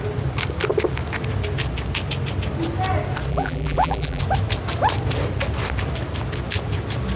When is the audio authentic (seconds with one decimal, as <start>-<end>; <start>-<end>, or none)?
0.0-3.3; 4.2-7.2